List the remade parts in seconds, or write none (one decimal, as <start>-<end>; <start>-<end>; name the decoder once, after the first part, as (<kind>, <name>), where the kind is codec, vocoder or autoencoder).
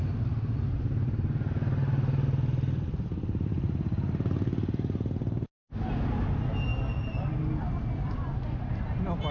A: none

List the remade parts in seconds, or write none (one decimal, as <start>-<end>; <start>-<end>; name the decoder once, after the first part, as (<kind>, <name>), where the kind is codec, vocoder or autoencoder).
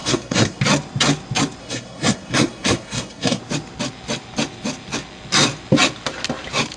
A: 0.0-0.6 (codec, SNAC); 1.6-3.4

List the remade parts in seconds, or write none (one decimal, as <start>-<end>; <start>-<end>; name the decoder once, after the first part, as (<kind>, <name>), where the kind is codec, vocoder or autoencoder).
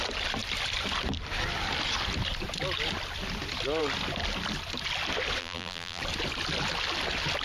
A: 5.4-6.0 (vocoder, BigVGAN v2)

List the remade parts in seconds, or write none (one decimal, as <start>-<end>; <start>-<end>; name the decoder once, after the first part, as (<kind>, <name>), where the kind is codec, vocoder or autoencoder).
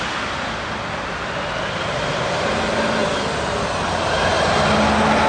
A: none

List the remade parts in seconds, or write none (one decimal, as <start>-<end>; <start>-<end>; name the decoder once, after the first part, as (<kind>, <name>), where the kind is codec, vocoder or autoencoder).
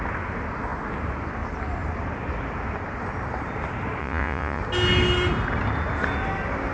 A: 4.0-4.6 (vocoder, Vocos)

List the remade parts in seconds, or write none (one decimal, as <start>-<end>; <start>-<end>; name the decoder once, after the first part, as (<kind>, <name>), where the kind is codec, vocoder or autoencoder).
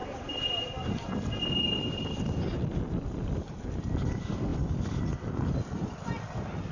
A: none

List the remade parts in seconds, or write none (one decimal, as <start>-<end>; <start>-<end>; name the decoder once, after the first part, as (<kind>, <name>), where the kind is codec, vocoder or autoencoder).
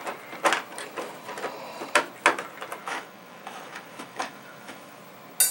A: 2.8-5.0 (autoencoder, DAC-VAE)